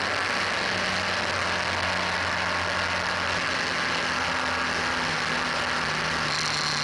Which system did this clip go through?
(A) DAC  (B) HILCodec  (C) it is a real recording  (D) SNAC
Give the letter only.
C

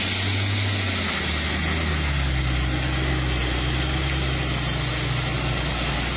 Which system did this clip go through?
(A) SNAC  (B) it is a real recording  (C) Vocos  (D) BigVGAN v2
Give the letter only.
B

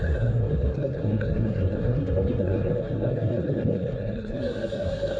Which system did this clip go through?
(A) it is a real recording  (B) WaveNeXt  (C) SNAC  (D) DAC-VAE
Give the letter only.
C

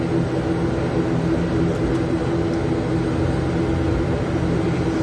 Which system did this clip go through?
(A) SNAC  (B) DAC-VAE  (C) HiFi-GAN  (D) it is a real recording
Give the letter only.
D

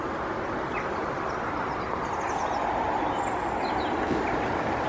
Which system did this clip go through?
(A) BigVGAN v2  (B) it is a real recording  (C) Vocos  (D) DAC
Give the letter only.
B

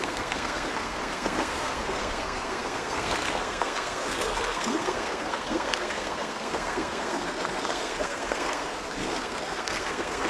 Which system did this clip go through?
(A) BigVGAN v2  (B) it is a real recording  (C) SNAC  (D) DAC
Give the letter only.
C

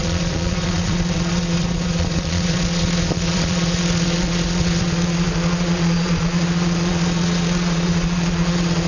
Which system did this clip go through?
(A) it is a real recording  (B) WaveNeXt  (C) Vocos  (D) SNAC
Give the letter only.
C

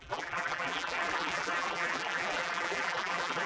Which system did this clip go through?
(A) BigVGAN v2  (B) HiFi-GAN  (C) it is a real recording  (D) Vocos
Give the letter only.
A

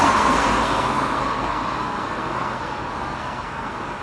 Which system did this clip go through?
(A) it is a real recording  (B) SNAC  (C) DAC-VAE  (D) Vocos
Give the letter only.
B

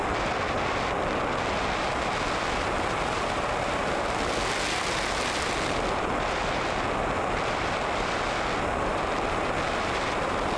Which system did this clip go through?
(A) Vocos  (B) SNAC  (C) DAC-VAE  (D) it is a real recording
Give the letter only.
D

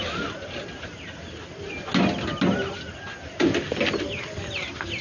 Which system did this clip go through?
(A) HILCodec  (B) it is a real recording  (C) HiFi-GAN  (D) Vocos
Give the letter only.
B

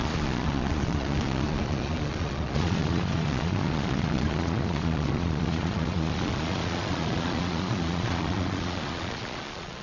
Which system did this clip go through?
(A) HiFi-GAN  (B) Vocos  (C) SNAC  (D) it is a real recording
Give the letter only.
B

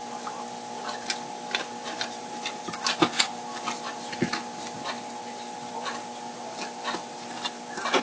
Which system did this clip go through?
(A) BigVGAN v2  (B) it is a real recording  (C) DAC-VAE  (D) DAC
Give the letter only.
B